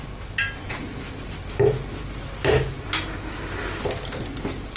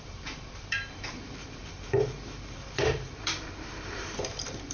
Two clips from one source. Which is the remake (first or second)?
second